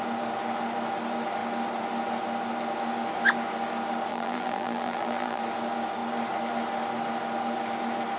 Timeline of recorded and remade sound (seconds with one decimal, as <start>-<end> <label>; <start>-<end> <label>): 0.0-4.1 recorded; 4.1-5.4 remade; 5.4-8.2 recorded